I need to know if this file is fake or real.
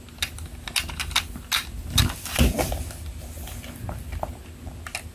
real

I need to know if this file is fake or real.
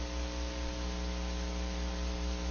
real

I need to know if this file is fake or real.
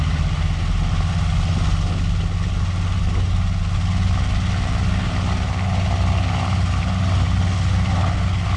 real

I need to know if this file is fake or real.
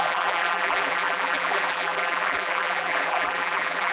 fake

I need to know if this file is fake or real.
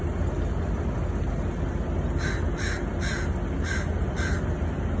real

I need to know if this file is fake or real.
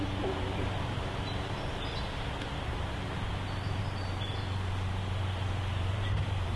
fake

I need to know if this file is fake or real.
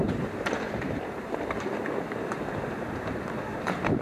fake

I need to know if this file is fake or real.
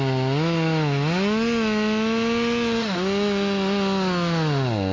real